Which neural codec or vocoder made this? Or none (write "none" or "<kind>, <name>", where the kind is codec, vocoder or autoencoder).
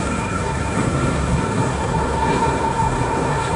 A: codec, SNAC